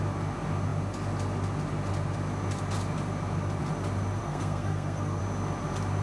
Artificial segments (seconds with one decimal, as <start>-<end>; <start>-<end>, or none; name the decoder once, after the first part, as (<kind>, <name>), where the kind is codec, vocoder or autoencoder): 4.2-5.2 (codec, SNAC)